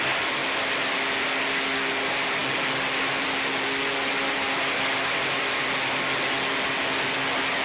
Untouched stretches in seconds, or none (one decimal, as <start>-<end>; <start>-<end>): 0.0-7.6